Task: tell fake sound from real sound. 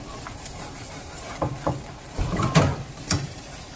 fake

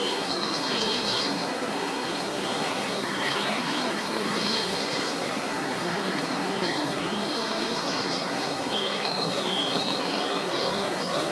fake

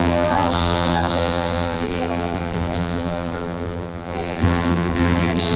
fake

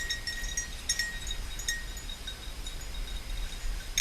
real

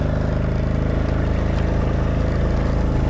real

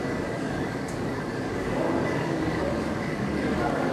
fake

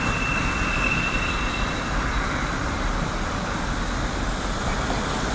real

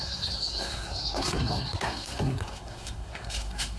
fake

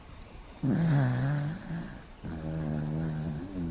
real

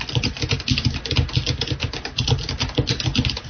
real